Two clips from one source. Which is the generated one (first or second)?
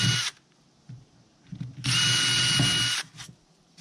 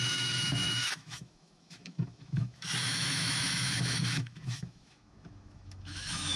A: second